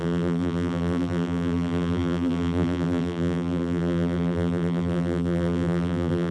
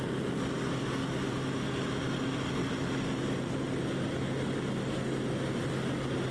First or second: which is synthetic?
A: first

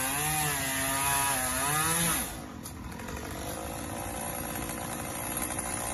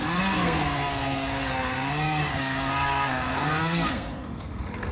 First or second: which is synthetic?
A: second